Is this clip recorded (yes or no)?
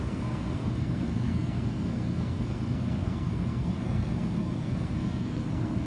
no